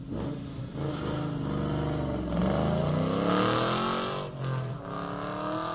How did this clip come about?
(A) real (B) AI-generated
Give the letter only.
A